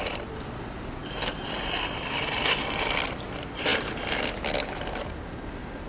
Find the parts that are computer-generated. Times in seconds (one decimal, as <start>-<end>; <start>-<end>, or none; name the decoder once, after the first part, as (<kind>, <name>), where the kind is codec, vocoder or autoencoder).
0.0-5.9 (vocoder, BigVGAN v2)